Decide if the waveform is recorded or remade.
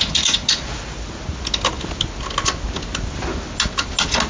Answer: recorded